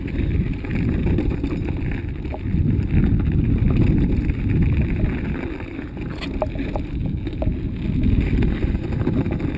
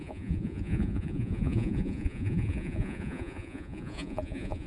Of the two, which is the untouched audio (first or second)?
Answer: first